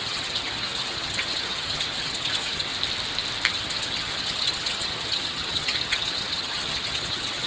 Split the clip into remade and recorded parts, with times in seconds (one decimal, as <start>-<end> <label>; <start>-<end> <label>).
0.0-2.7 remade; 2.7-3.5 recorded; 3.5-7.5 remade